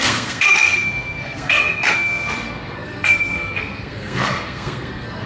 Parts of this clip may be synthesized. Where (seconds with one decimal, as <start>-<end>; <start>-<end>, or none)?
0.0-5.3

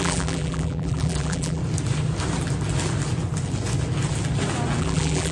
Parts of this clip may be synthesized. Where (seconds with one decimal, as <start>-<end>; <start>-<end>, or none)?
0.0-1.6; 4.8-5.3

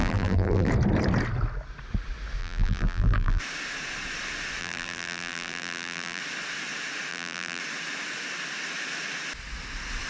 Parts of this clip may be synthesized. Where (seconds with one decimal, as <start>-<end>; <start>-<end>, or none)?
0.0-0.7; 2.4-3.4; 4.6-6.2; 7.1-7.6

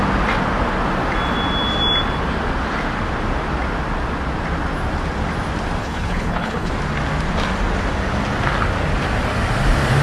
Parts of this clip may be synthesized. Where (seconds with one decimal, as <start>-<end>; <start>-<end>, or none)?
5.8-6.7

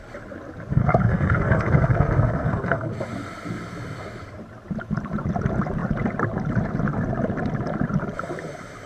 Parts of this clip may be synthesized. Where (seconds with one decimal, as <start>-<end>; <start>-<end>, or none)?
0.7-2.9

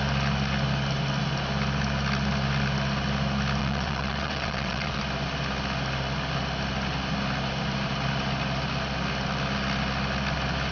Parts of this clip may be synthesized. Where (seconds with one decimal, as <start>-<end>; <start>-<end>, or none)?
3.6-5.0